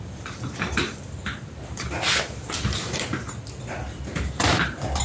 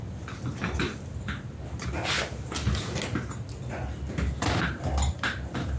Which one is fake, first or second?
first